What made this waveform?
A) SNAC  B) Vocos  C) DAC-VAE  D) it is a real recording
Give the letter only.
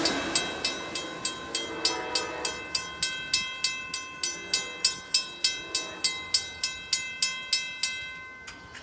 D